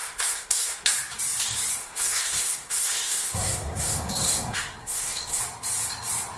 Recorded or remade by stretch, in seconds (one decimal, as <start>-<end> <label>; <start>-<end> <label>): 0.0-0.9 remade; 0.9-1.8 recorded; 1.8-5.4 remade; 5.4-6.4 recorded